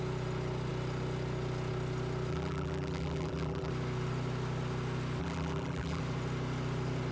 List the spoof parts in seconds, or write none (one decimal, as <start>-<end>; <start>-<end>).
2.3-3.7; 5.2-6.0